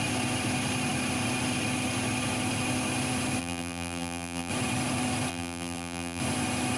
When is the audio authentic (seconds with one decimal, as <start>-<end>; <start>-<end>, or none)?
0.0-3.4; 4.5-5.3; 6.2-6.8